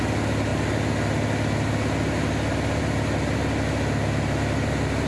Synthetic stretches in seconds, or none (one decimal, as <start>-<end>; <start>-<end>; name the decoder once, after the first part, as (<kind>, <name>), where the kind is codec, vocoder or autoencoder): none